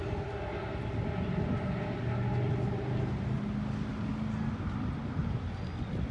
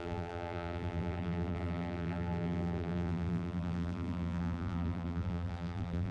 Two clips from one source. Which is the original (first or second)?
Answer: first